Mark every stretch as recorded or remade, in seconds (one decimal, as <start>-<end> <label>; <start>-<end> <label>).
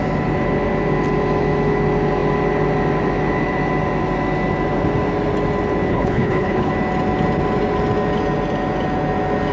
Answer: 0.0-5.9 recorded; 5.9-6.7 remade; 6.7-9.5 recorded